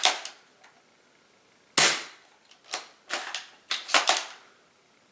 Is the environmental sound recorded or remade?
recorded